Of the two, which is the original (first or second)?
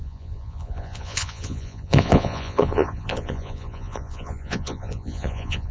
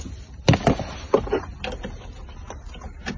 second